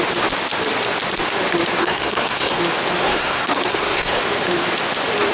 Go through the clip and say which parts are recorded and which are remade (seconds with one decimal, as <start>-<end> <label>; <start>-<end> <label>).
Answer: 0.0-1.8 recorded; 1.8-2.6 remade; 2.6-3.0 recorded; 3.0-4.2 remade; 4.2-5.3 recorded